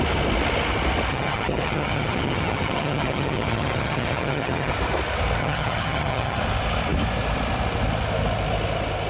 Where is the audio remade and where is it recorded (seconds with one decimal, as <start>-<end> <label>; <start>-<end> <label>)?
0.0-1.1 recorded; 1.1-4.7 remade; 4.7-5.4 recorded; 5.4-6.4 remade; 6.4-9.1 recorded